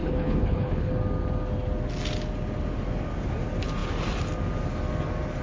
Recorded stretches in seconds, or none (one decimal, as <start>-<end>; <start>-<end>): 0.9-5.4

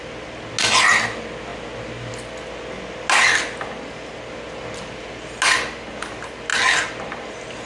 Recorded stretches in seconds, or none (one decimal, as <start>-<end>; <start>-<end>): 0.0-7.7